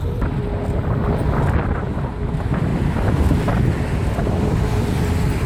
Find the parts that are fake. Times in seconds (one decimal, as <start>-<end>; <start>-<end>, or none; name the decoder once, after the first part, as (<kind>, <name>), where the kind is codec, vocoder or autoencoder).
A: 2.7-4.9 (vocoder, BigVGAN v2)